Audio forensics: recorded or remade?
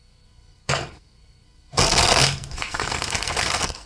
remade